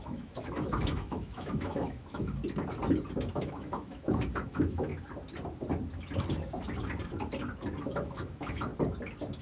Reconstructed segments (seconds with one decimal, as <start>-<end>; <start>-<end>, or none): 0.0-2.4; 3.3-4.9; 7.8-8.7